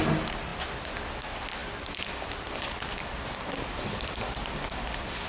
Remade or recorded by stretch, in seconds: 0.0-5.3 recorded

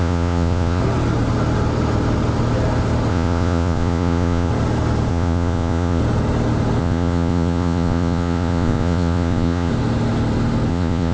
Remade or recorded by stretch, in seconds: 0.0-0.8 remade; 0.8-3.1 recorded; 3.1-4.5 remade; 4.5-5.1 recorded; 5.1-6.0 remade; 6.0-6.8 recorded; 6.8-9.7 remade; 9.7-10.7 recorded; 10.7-11.1 remade

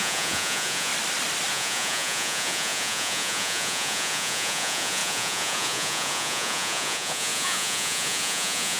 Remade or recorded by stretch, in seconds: 0.0-0.9 remade; 0.9-1.5 recorded; 1.5-8.8 remade

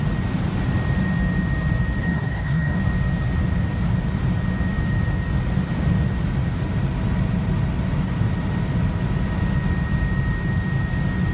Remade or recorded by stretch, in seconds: 0.0-2.0 recorded; 2.0-2.8 remade; 2.8-11.3 recorded

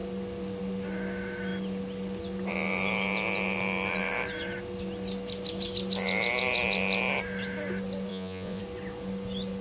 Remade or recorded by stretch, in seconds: 0.0-8.1 recorded; 8.1-8.6 remade; 8.6-9.6 recorded

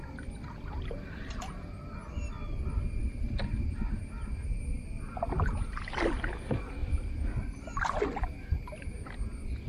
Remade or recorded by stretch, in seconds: 0.0-3.0 recorded; 3.0-4.0 remade; 4.0-6.8 recorded; 6.8-8.0 remade; 8.0-9.7 recorded

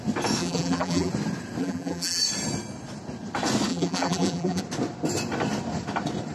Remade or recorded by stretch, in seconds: 0.0-0.4 recorded; 0.4-1.1 remade; 1.1-1.6 recorded; 1.6-2.2 remade; 2.2-3.7 recorded; 3.7-4.6 remade; 4.6-6.3 recorded

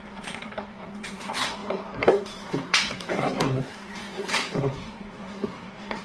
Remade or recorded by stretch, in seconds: 0.0-6.0 remade